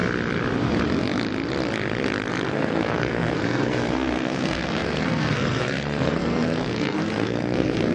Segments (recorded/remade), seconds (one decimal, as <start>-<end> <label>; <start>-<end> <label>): 0.0-2.5 recorded; 2.5-7.9 remade